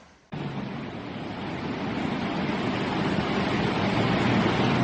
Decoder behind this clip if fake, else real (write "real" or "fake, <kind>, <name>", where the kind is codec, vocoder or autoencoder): real